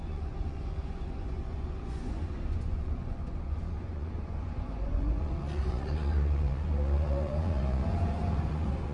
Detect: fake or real fake